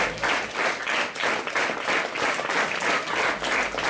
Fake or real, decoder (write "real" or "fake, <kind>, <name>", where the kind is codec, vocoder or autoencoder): real